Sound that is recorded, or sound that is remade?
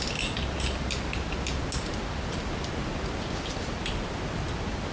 recorded